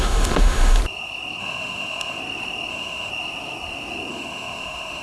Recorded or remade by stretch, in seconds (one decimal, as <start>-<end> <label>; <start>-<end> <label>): 0.0-0.8 remade; 0.8-1.4 recorded; 1.4-2.2 remade; 2.2-2.7 recorded; 2.7-3.1 remade; 3.1-4.1 recorded; 4.1-5.0 remade